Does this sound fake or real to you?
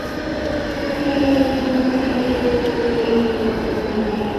fake